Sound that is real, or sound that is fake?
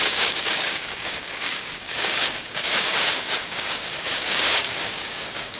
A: fake